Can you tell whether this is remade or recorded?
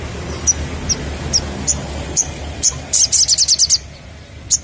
recorded